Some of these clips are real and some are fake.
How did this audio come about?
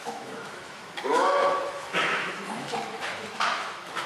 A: fake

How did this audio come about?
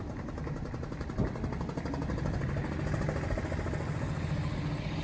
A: real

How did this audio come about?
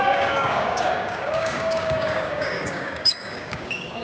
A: fake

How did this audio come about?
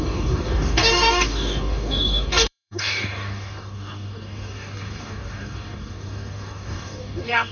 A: fake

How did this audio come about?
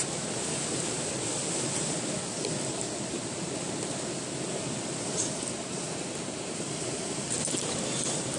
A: real